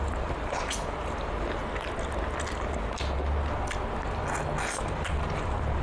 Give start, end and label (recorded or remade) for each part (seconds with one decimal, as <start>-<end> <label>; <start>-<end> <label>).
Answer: 0.0-1.6 remade; 1.6-4.9 recorded; 4.9-5.8 remade